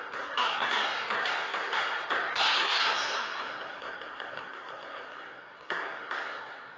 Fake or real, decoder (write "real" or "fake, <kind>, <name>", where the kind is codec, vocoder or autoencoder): fake, codec, SNAC